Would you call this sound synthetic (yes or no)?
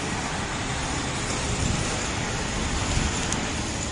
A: no